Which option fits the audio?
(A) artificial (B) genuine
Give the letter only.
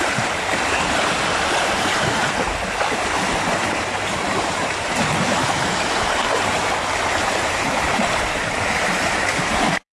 A